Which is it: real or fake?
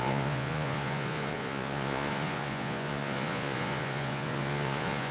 fake